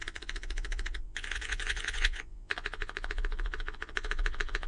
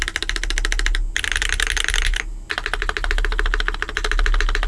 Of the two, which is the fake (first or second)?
first